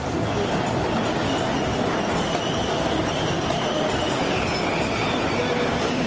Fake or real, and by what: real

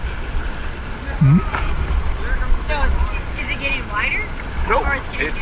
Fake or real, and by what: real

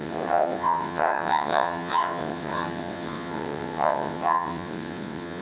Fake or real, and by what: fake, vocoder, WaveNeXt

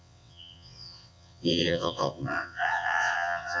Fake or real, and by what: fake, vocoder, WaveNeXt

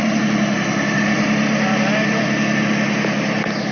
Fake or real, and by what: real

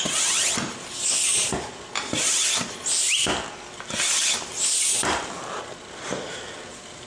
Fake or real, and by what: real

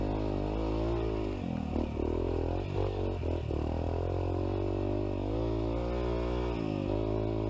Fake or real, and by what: real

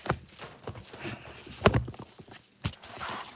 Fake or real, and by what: real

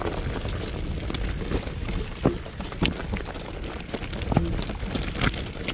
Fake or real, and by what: real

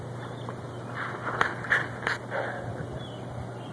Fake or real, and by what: real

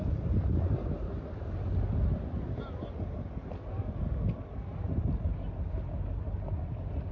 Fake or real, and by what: real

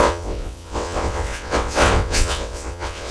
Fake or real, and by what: fake, vocoder, WaveNeXt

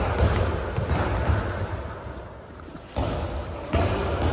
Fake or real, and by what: real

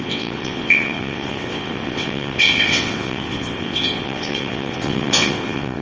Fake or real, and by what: fake, vocoder, WaveNeXt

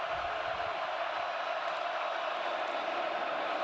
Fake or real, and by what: real